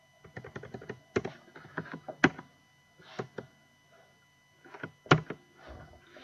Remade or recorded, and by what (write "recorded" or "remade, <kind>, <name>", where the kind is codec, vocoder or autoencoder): recorded